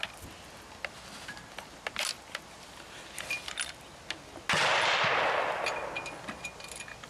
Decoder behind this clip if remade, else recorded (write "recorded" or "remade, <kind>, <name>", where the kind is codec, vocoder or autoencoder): recorded